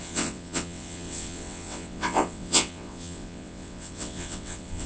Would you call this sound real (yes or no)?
no